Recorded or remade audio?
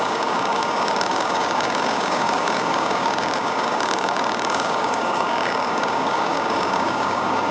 remade